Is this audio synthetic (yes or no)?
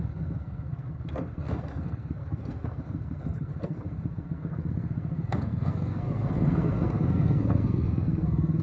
yes